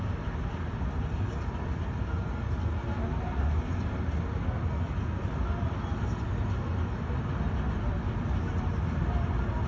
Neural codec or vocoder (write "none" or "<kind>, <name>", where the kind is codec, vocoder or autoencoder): none